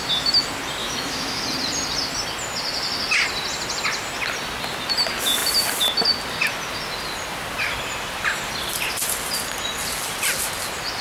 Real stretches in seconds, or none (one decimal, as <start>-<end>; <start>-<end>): 0.0-0.8; 1.4-11.0